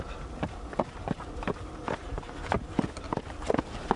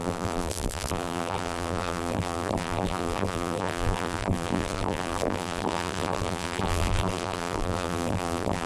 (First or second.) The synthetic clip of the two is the second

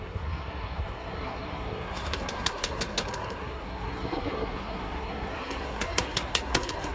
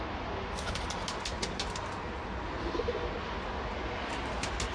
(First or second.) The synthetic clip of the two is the first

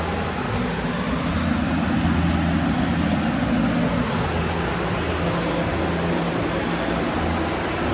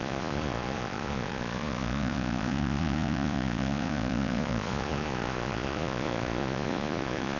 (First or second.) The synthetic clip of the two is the second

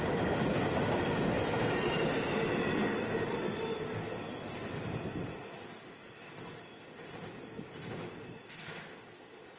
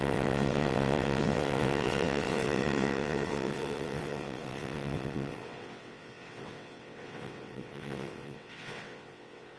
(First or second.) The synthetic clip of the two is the second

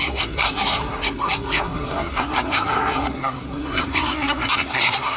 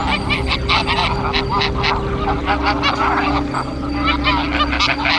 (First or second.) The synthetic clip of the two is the first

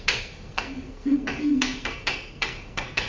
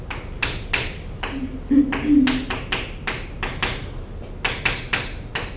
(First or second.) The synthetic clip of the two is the first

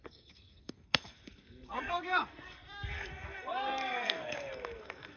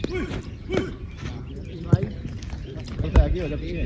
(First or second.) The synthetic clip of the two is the first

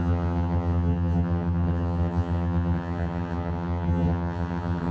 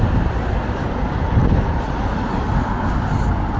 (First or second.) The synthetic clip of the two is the first